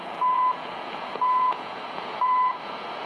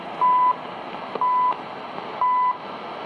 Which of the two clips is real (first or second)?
second